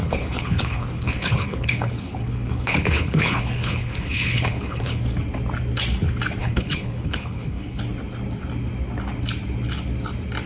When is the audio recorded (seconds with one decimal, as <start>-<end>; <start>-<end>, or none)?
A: 5.0-6.4; 7.8-10.5